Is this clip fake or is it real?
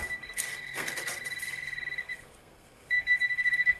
fake